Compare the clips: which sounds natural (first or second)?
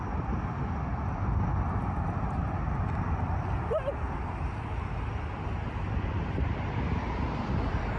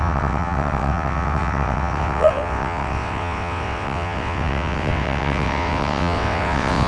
first